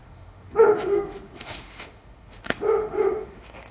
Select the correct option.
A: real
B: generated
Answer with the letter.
B